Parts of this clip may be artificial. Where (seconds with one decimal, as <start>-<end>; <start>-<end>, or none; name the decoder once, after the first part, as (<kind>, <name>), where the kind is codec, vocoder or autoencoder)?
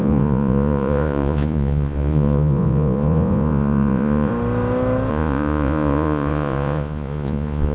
0.0-4.3 (vocoder, Vocos); 5.1-7.7